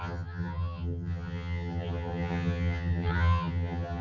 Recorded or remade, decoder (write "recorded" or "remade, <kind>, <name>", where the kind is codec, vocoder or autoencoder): remade, vocoder, HiFi-GAN